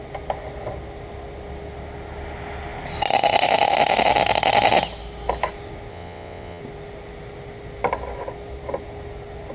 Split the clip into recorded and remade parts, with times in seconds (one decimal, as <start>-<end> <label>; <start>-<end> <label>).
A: 0.0-5.9 recorded; 5.9-6.6 remade; 6.6-9.5 recorded